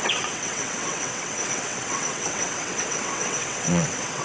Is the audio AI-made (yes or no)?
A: yes